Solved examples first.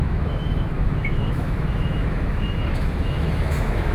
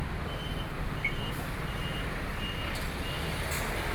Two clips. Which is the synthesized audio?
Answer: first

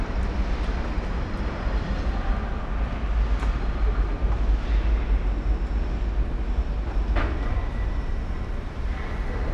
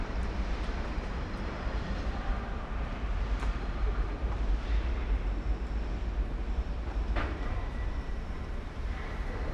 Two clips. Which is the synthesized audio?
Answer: second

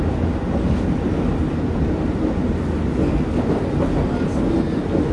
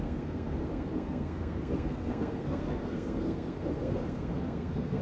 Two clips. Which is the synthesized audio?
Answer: second